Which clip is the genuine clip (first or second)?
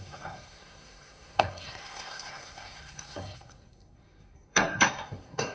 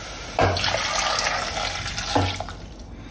second